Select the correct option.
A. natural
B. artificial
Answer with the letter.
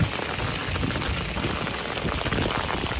A